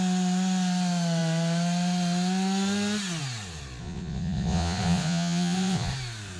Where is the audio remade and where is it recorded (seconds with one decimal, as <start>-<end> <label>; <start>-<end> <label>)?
0.0-3.8 recorded; 3.8-5.9 remade; 5.9-6.4 recorded

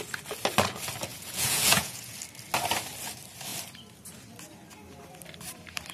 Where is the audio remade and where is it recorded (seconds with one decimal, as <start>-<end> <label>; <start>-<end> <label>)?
0.0-1.1 recorded; 1.1-2.2 remade; 2.2-5.9 recorded

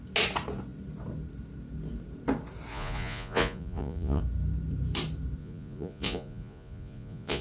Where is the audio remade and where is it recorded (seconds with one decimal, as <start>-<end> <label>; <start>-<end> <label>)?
0.0-2.7 recorded; 2.7-4.2 remade; 4.2-5.4 recorded; 5.4-7.4 remade